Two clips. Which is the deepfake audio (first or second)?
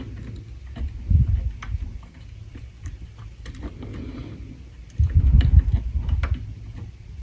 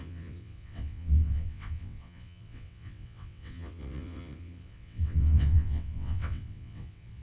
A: second